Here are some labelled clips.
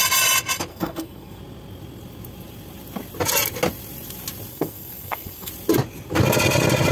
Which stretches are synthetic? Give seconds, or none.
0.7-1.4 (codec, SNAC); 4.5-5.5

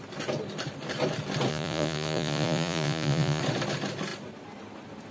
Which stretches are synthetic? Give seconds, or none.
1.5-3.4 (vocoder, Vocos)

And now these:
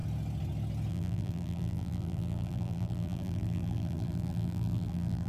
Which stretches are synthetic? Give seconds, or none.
0.9-5.3 (vocoder, BigVGAN v2)